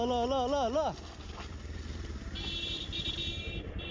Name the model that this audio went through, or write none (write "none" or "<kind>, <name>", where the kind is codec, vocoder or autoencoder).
none